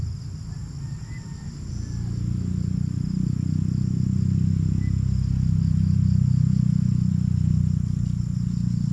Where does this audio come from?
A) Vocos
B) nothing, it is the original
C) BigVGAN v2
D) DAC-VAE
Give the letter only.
B